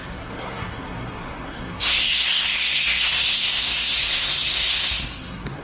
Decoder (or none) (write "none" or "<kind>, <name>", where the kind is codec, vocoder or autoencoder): codec, SNAC